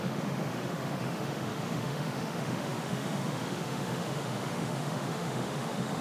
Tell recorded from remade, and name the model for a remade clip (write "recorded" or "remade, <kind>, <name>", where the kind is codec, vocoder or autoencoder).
remade, autoencoder, DAC-VAE